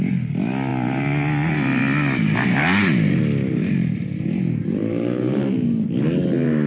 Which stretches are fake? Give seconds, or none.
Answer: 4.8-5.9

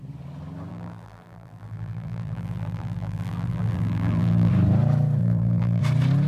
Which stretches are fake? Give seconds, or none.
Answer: 0.7-4.5; 5.2-5.8

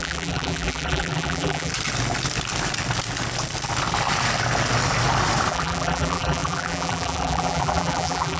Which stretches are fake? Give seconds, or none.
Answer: 0.0-1.7; 5.5-8.4

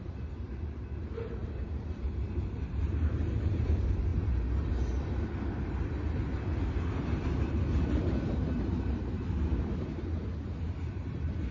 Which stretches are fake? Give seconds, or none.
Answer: 0.0-4.1; 8.6-9.5; 10.8-11.5

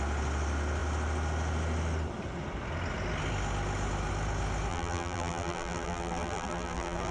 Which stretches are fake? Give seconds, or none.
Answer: 4.7-7.1

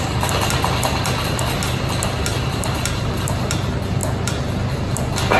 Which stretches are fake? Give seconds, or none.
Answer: 2.3-3.1

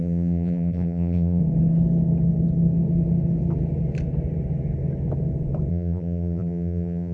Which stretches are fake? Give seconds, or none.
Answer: 0.0-1.4; 5.7-7.1